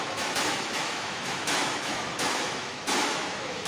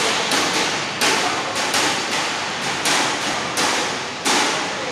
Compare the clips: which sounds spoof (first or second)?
first